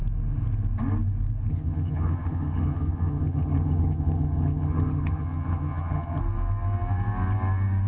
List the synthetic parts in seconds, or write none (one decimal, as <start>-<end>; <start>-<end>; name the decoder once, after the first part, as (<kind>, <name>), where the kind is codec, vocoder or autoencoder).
1.5-6.2 (vocoder, HiFi-GAN)